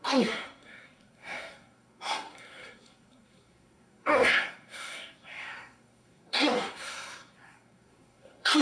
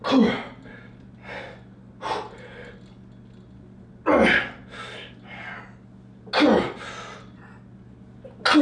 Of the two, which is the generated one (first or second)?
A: first